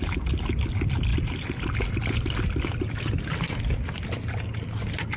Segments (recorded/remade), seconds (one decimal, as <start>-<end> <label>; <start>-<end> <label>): 0.0-5.2 recorded